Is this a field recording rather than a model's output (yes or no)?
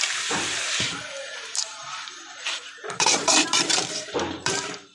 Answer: no